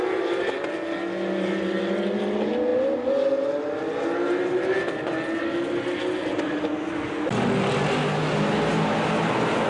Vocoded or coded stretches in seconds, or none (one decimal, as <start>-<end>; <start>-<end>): none